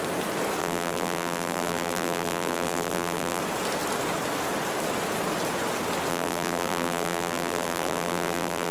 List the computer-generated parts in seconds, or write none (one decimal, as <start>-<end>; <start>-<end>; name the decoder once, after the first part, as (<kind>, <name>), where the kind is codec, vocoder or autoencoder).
0.6-3.4 (vocoder, BigVGAN v2); 6.1-8.7